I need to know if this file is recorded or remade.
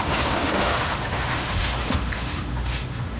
remade